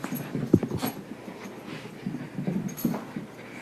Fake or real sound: real